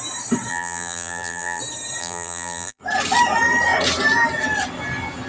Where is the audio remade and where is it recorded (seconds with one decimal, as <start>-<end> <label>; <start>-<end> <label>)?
0.0-0.5 recorded; 0.5-1.6 remade; 1.6-2.0 recorded; 2.0-2.8 remade; 2.8-5.3 recorded